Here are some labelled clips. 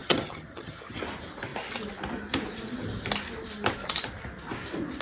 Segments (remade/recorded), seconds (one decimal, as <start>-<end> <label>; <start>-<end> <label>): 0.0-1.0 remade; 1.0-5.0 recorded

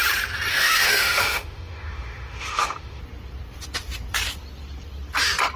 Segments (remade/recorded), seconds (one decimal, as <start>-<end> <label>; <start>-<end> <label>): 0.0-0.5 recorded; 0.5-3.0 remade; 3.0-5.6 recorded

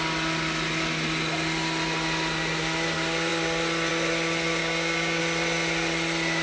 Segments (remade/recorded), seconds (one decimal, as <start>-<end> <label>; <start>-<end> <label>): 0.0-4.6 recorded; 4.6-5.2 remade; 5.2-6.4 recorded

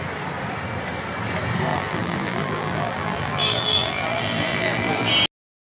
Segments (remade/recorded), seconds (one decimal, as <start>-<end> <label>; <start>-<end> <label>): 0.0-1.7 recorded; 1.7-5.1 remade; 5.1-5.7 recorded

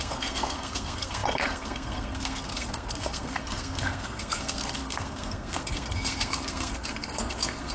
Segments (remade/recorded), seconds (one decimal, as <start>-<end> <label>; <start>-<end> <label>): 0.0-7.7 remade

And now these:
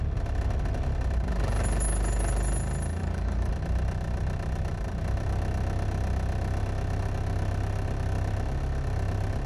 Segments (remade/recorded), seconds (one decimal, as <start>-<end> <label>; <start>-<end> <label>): 0.0-3.0 recorded; 3.0-3.5 remade; 3.5-9.5 recorded

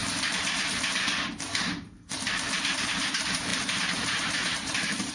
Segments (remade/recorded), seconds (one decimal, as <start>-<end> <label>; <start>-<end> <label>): 0.0-2.6 recorded; 2.6-5.1 remade